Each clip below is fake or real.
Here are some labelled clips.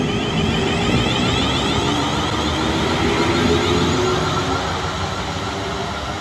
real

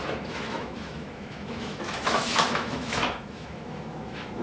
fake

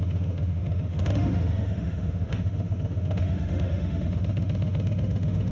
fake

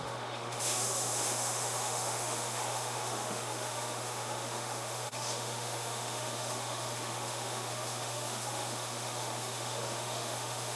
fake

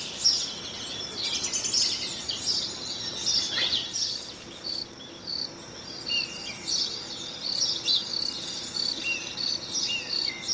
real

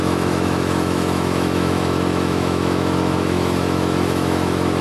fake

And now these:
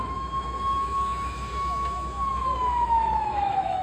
fake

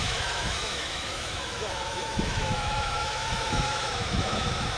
fake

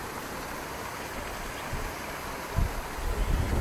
real